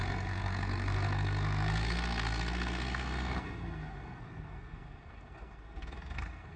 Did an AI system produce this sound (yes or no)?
yes